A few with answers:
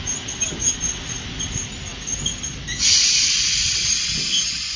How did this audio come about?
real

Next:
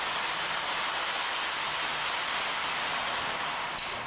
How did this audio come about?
real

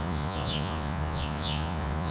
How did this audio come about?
fake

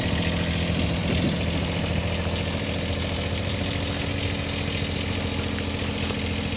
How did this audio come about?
real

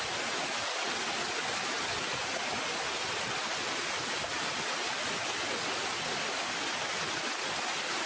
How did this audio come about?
real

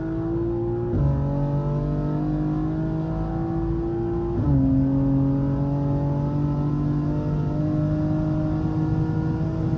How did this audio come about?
real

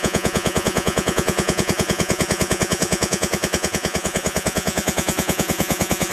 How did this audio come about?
fake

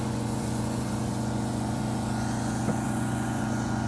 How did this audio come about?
fake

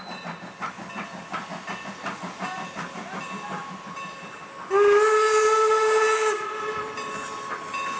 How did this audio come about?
real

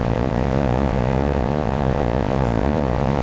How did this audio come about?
fake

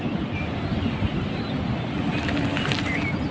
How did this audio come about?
real